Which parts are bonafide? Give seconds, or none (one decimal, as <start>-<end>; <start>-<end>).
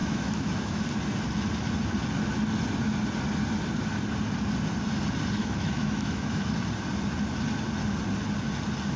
0.8-5.4; 6.5-9.0